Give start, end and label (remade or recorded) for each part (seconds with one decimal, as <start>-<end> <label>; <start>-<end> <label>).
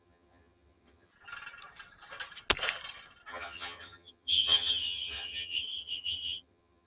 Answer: 0.0-1.1 remade; 1.1-3.3 recorded; 3.3-6.9 remade